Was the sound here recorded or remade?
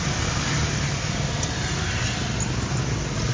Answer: recorded